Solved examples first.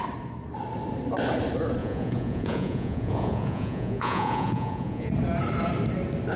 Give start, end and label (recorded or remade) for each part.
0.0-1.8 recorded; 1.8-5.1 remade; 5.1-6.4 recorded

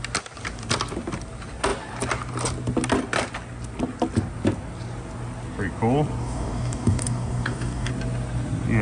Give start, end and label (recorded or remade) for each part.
0.0-6.2 recorded; 6.2-7.9 remade; 7.9-8.8 recorded

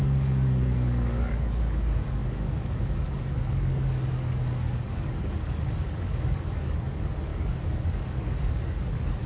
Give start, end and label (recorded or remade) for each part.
0.0-9.3 remade

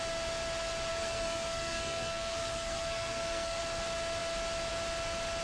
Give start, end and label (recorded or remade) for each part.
0.0-0.9 recorded; 0.9-3.6 remade; 3.6-5.4 recorded

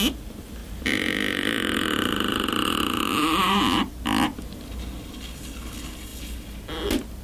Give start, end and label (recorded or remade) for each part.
0.0-0.6 recorded; 0.6-3.9 remade; 3.9-7.2 recorded

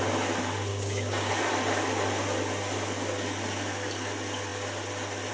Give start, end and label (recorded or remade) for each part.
0.0-0.7 recorded; 0.7-1.3 remade; 1.3-5.3 recorded

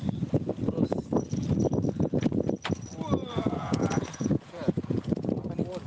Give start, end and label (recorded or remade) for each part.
0.0-3.2 recorded; 3.2-5.1 remade; 5.1-5.9 recorded